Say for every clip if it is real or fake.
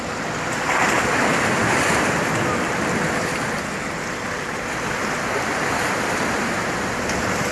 fake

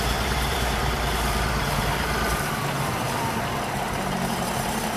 fake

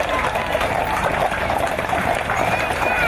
fake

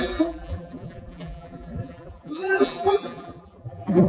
fake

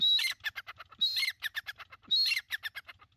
real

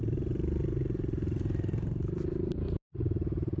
fake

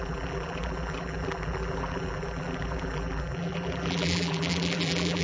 fake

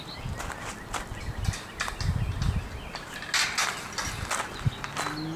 real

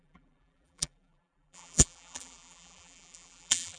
fake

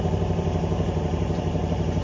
fake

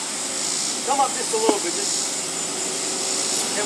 real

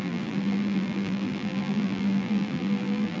fake